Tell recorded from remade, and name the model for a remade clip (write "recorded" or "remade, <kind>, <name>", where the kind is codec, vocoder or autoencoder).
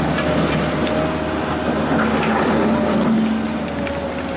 recorded